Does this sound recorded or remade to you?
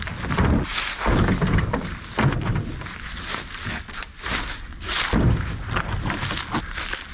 recorded